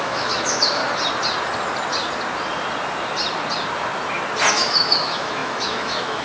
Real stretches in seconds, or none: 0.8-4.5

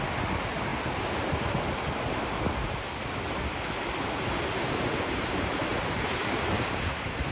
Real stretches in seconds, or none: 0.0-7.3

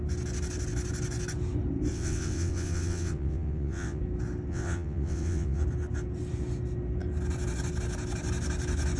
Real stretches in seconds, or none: 0.0-1.9; 4.0-4.5; 5.6-9.0

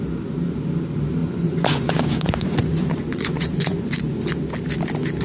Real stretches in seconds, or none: 0.0-1.2; 4.3-5.2

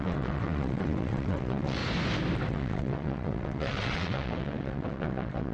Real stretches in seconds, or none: 1.8-2.5

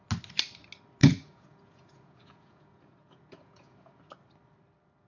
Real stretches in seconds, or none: 0.0-1.0; 4.1-5.1